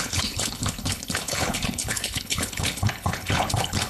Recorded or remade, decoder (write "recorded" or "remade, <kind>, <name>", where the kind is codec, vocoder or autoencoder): remade, codec, HILCodec